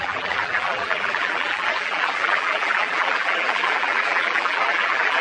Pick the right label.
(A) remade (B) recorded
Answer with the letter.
A